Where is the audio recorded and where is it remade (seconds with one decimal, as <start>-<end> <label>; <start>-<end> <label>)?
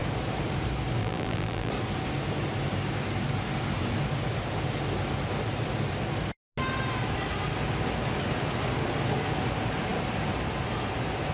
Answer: 0.0-1.0 recorded; 1.0-1.7 remade; 1.7-11.3 recorded